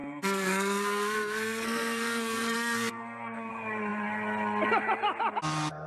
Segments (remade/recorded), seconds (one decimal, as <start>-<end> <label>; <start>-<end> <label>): 0.0-3.5 remade; 3.5-5.9 recorded

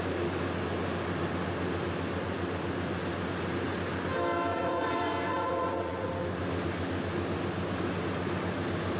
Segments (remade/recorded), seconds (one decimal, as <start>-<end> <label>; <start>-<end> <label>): 0.0-4.5 recorded; 4.5-6.1 remade; 6.1-9.0 recorded

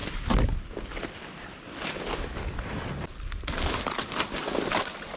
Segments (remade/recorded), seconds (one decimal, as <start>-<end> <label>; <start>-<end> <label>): 0.0-5.2 recorded

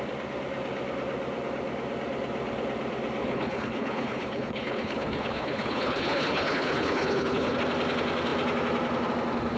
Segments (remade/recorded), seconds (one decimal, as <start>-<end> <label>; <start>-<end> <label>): 0.0-3.2 recorded; 3.2-7.6 remade; 7.6-9.6 recorded

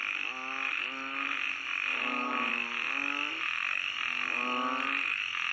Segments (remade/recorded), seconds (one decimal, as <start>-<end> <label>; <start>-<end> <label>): 0.0-1.9 recorded; 1.9-2.5 remade; 2.5-5.5 recorded

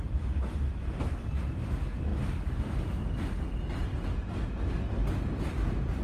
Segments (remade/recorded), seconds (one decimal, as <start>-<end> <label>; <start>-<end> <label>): 0.0-6.0 recorded

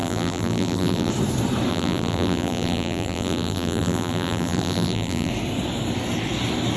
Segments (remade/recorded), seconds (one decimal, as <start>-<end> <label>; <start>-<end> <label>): 0.0-1.1 remade; 1.1-1.7 recorded; 1.7-5.3 remade; 5.3-6.8 recorded

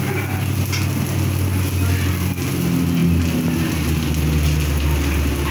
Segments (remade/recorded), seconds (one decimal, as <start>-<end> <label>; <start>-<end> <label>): 0.0-5.5 recorded